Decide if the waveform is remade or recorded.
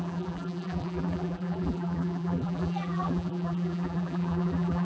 remade